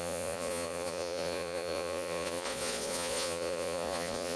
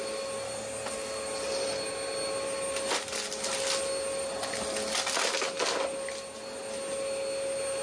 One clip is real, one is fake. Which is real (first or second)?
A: second